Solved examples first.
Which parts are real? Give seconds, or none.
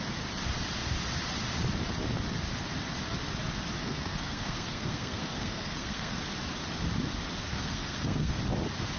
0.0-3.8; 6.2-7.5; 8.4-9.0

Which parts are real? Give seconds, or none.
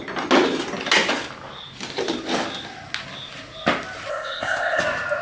0.0-4.1; 4.8-5.2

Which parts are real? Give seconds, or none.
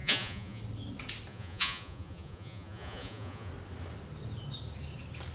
0.6-1.3; 3.5-5.3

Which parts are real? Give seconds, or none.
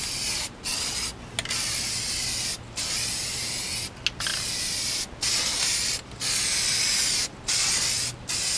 0.0-8.6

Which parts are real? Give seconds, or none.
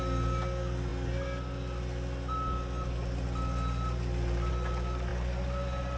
0.0-6.0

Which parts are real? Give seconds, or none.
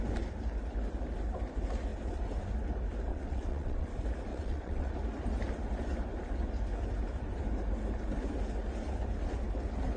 0.0-3.1; 3.9-4.3; 4.9-10.0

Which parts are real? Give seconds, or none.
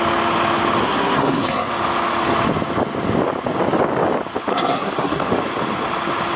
0.0-0.8; 1.7-4.5; 5.3-6.4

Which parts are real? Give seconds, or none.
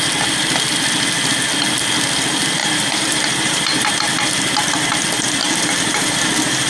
0.0-2.6; 3.9-5.4